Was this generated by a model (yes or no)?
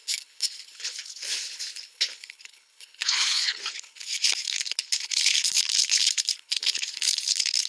yes